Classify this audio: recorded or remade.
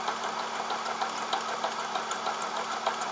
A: recorded